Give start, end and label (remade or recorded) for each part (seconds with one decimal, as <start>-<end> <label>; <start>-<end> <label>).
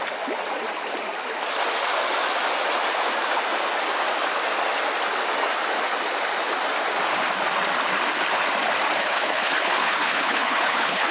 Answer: 0.0-9.0 recorded; 9.0-11.1 remade